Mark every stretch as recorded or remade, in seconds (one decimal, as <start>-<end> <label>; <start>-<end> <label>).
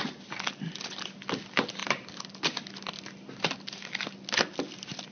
0.0-5.1 recorded